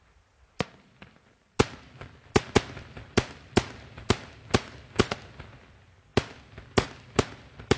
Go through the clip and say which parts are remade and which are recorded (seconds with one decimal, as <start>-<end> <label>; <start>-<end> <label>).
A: 0.0-7.8 remade